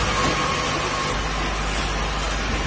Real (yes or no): yes